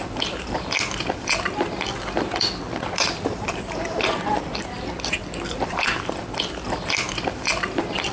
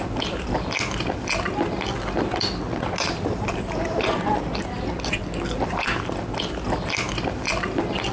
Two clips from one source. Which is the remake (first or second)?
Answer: first